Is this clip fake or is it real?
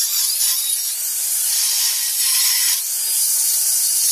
fake